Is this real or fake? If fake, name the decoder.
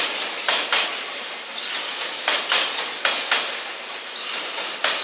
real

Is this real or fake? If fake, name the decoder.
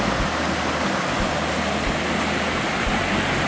real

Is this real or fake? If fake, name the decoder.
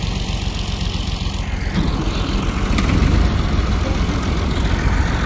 real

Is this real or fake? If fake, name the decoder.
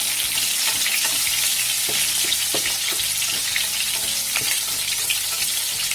real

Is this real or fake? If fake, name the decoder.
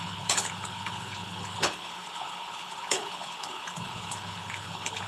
fake, codec, HILCodec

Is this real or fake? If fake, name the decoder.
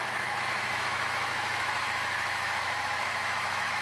fake, autoencoder, DAC-VAE